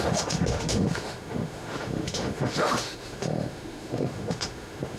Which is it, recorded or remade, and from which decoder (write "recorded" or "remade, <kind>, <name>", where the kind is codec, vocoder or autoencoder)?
remade, autoencoder, DAC-VAE